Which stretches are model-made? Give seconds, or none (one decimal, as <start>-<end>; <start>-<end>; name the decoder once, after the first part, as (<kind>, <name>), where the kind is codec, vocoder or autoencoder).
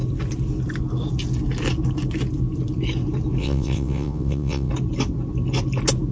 3.4-4.7 (vocoder, WaveNeXt)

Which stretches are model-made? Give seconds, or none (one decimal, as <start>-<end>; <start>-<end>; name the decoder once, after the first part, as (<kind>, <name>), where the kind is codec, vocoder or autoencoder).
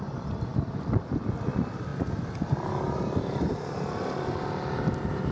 none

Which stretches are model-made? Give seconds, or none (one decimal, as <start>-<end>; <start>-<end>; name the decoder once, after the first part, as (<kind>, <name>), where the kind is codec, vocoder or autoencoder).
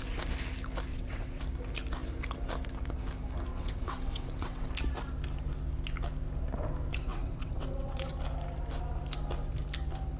0.9-1.4 (vocoder, WaveNeXt); 3.5-4.7; 7.1-8.1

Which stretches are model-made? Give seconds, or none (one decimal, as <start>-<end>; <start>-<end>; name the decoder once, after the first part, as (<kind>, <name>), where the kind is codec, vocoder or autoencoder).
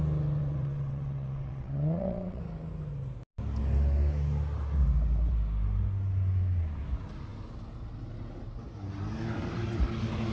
0.4-2.4 (vocoder, WaveNeXt)